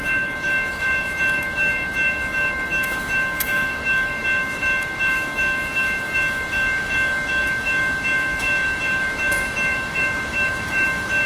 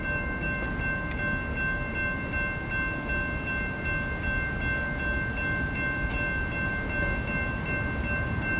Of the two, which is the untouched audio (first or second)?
second